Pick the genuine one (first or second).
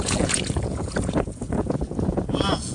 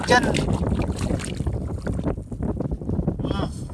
second